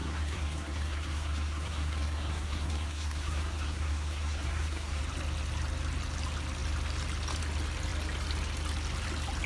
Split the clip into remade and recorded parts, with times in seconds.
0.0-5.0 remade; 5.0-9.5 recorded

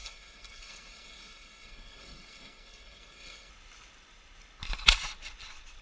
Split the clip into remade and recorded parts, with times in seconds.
0.0-3.5 remade; 3.5-5.8 recorded

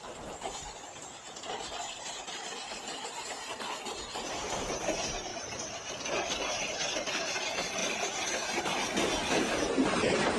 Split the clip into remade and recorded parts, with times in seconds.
0.0-10.4 remade

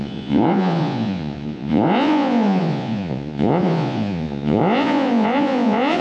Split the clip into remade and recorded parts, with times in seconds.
0.0-6.0 remade

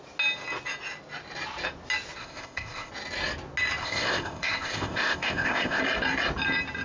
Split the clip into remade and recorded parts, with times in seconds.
0.0-2.2 recorded; 2.2-2.9 remade; 2.9-3.8 recorded; 3.8-5.8 remade; 5.8-6.8 recorded